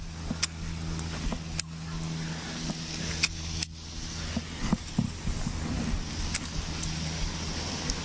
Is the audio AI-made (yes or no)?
no